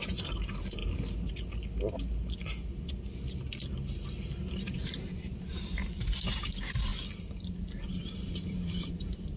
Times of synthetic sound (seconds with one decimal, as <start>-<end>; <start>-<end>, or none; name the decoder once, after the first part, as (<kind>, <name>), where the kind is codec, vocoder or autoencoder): 0.0-0.8 (vocoder, BigVGAN v2); 4.6-6.9; 8.0-9.4